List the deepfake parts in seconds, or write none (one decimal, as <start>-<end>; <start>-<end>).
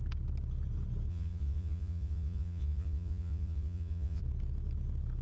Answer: 1.1-4.2